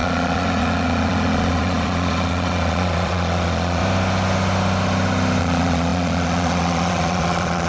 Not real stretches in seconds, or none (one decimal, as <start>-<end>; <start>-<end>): 0.0-3.8; 5.4-7.7